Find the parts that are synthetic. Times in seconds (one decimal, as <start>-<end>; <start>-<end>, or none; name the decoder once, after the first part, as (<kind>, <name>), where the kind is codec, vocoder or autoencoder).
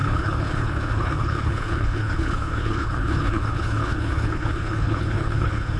0.0-5.8 (codec, HILCodec)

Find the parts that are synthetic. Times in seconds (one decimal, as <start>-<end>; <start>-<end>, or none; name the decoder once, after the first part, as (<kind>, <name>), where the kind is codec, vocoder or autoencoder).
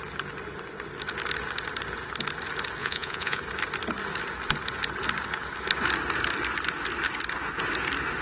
2.8-3.4 (vocoder, Vocos)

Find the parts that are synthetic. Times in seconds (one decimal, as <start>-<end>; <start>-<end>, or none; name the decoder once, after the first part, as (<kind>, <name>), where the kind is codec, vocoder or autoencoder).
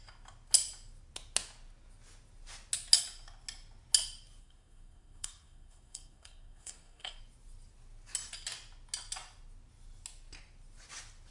4.4-7.2 (codec, SNAC)